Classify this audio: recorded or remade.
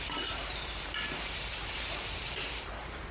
remade